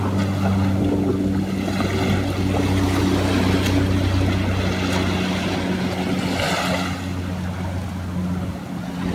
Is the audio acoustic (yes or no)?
yes